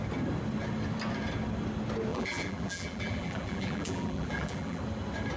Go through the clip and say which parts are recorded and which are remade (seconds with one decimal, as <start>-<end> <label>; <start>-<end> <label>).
0.0-2.1 recorded; 2.1-4.8 remade; 4.8-5.4 recorded